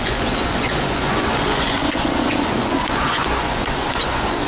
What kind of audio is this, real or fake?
fake